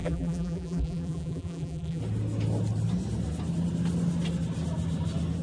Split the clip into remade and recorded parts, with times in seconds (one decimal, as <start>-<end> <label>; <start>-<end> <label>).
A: 0.0-2.0 remade; 2.0-5.4 recorded